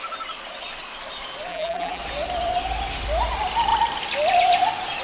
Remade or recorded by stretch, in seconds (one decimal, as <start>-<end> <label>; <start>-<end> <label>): 0.0-1.5 recorded; 1.5-2.0 remade; 2.0-5.0 recorded